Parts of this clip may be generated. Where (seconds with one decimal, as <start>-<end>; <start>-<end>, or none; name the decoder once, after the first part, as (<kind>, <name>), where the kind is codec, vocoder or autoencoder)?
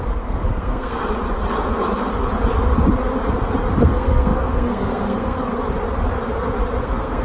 0.0-1.0 (codec, SNAC); 3.8-5.5; 6.8-7.2